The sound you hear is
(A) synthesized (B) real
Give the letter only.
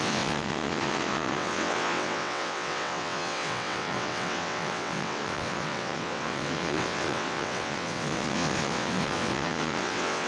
A